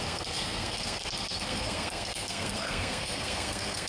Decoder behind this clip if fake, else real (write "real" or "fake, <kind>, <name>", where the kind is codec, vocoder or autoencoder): fake, codec, SNAC